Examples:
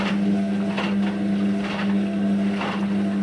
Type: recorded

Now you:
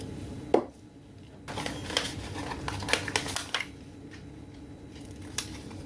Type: recorded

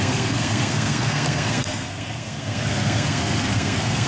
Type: remade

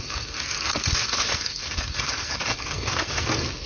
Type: remade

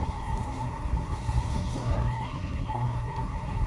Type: remade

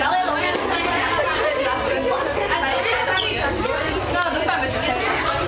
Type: recorded